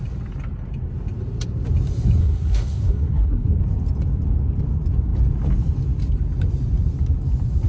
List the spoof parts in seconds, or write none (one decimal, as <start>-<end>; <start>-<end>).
2.2-3.6